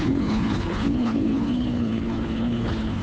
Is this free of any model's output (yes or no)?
no